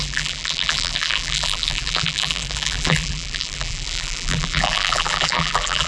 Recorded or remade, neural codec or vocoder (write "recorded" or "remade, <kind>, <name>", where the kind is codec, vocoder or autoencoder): remade, vocoder, BigVGAN v2